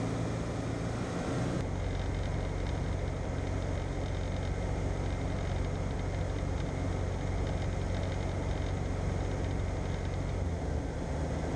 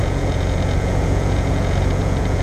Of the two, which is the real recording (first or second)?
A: first